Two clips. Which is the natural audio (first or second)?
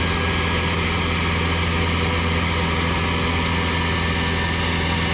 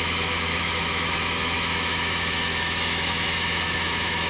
first